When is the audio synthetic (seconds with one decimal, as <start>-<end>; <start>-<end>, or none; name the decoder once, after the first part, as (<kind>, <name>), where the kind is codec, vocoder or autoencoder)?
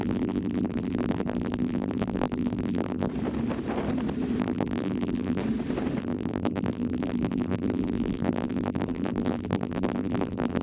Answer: 0.0-3.1 (vocoder, BigVGAN v2); 4.4-5.4; 6.0-10.6